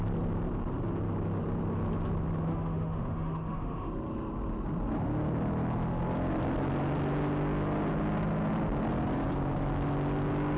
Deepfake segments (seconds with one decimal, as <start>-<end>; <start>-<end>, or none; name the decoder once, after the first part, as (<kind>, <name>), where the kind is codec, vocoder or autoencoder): 2.5-3.9 (autoencoder, DAC-VAE)